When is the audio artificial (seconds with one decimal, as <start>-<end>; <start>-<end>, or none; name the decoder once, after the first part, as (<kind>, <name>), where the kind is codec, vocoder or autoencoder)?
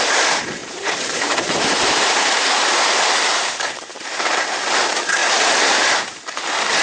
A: 0.6-4.6 (vocoder, BigVGAN v2); 5.2-6.0